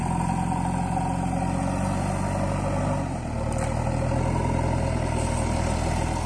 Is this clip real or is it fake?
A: real